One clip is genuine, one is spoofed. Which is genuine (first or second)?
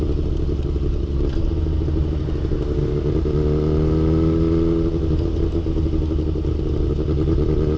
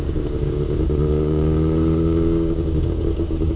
first